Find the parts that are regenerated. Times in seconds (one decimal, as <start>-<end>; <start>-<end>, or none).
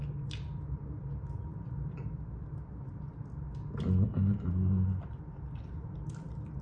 1.5-3.5